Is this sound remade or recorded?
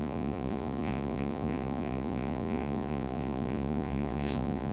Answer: remade